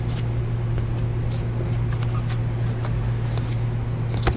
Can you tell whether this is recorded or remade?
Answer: recorded